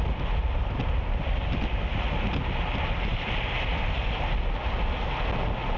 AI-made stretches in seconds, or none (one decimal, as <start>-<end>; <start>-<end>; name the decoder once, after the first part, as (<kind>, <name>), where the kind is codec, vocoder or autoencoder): none